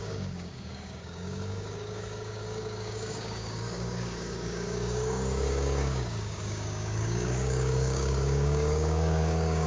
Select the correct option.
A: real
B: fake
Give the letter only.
B